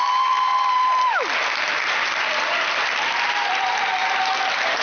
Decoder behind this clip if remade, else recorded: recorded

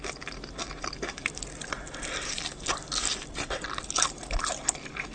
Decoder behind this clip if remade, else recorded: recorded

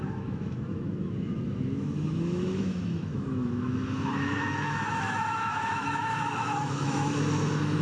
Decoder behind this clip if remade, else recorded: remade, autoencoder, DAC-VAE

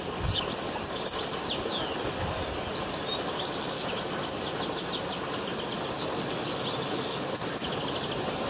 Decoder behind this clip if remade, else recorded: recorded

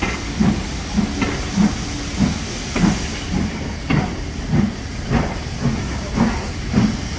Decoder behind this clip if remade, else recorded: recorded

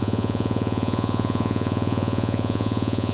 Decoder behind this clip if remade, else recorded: remade, vocoder, Vocos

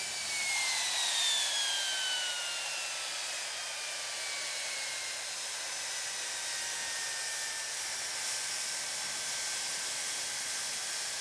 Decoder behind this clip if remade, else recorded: recorded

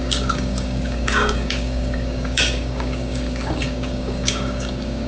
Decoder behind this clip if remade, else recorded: remade, codec, DAC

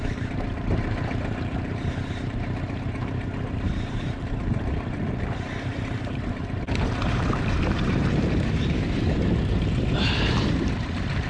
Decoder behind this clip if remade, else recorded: remade, vocoder, BigVGAN v2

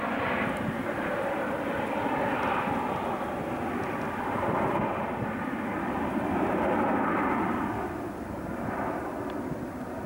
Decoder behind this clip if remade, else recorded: recorded